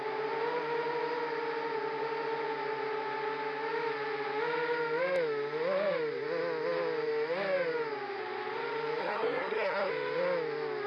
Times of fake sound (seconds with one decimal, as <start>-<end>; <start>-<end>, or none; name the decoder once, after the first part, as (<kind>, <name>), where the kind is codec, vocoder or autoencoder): 9.0-9.9 (codec, SNAC)